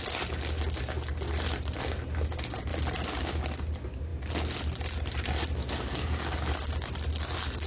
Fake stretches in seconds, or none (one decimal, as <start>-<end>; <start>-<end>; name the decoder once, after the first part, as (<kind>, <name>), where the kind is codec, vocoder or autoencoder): none